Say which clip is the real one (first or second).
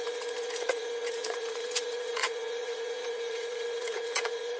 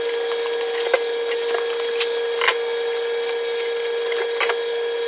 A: second